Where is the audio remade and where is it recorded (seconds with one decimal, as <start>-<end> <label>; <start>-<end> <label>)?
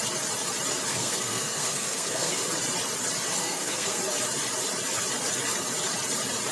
0.0-0.9 recorded; 0.9-2.4 remade; 2.4-3.4 recorded; 3.4-4.0 remade; 4.0-6.5 recorded